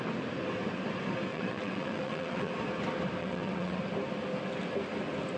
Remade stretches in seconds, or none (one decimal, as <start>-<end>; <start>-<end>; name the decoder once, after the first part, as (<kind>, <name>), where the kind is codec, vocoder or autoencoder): 1.3-2.5 (vocoder, WaveNeXt); 3.2-3.8